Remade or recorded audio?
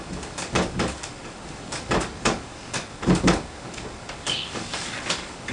remade